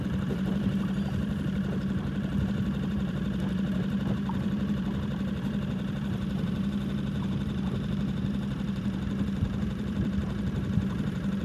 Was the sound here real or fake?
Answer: fake